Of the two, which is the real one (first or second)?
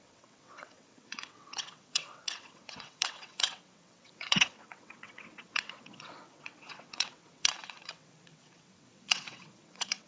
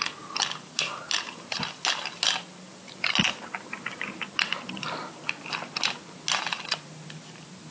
second